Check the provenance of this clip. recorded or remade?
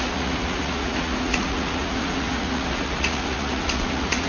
remade